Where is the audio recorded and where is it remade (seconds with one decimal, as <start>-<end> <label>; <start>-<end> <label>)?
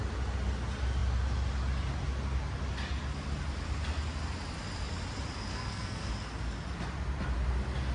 0.0-5.5 recorded; 5.5-6.1 remade; 6.1-7.9 recorded